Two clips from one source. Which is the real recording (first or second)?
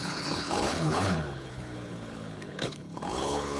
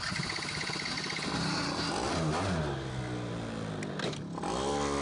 second